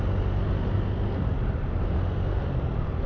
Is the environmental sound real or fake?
real